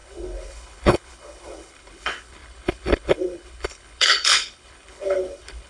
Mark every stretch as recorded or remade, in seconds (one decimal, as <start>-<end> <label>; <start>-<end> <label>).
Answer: 0.0-5.7 remade